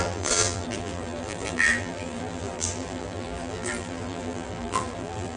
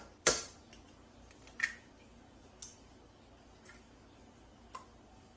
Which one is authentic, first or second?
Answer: second